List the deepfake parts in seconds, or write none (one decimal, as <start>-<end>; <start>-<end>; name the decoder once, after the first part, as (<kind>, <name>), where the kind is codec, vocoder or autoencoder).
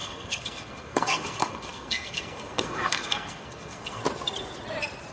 0.0-4.0 (codec, SNAC)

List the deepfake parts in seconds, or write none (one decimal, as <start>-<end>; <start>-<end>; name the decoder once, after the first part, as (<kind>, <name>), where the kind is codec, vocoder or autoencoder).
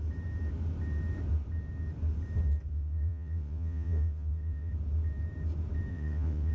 2.7-4.7 (vocoder, WaveNeXt); 5.9-6.5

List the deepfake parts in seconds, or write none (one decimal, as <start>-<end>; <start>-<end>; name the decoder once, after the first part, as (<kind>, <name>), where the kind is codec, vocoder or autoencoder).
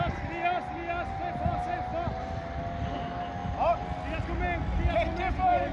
none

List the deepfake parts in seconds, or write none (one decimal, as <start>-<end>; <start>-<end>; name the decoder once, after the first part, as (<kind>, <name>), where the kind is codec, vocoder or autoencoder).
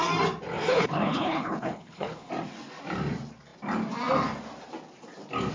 0.7-2.3 (codec, HILCodec)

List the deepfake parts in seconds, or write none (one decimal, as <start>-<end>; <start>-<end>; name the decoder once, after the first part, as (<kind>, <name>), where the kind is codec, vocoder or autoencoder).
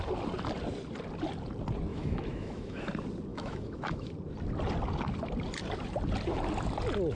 1.9-2.9 (autoencoder, DAC-VAE); 3.3-4.1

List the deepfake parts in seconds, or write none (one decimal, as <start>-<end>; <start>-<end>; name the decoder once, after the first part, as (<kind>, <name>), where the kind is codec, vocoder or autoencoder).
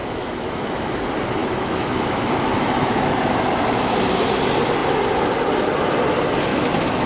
0.0-1.0 (autoencoder, DAC-VAE); 1.4-3.3; 6.5-7.1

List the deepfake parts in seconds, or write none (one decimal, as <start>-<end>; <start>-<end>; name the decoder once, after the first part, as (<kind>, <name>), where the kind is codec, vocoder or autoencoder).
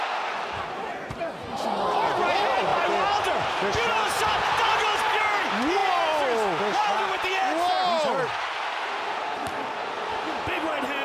none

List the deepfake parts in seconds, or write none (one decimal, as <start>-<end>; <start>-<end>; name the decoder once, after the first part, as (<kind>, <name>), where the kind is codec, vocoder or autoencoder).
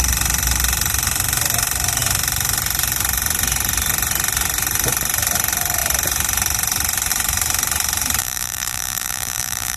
8.2-9.8 (vocoder, BigVGAN v2)